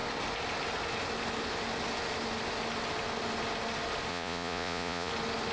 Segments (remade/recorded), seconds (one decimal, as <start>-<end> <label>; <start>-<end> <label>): 0.0-4.1 recorded; 4.1-5.1 remade; 5.1-5.5 recorded